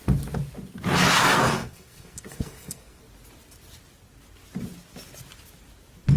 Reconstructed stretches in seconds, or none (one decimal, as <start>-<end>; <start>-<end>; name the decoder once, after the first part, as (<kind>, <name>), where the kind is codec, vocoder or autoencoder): 1.2-3.0 (codec, SNAC)